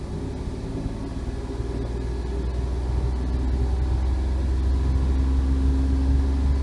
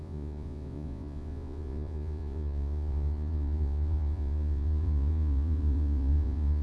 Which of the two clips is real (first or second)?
first